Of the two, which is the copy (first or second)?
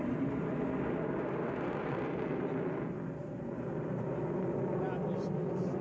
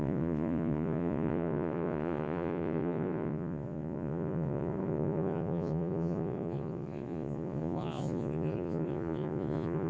second